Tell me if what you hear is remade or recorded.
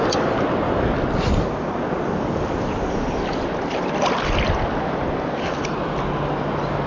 recorded